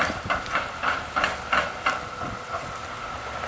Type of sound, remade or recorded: recorded